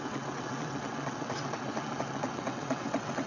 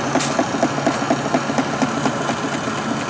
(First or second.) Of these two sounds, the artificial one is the first